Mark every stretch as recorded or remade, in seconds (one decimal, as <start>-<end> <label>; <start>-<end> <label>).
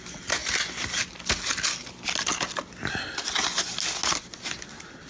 0.0-5.1 recorded